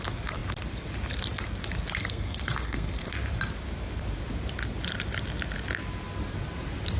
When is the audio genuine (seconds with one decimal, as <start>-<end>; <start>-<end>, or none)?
0.0-2.0; 3.1-7.0